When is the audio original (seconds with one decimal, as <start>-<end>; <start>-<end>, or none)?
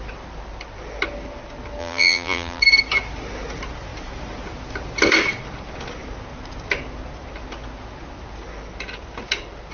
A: 0.0-1.8; 2.6-9.7